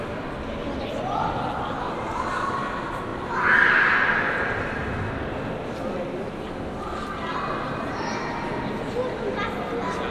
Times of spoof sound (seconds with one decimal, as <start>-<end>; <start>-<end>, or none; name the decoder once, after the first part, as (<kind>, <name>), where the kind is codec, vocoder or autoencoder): none